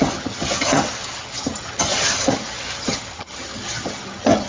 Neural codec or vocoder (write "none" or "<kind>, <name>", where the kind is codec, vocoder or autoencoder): vocoder, HiFi-GAN